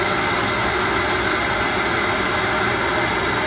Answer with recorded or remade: recorded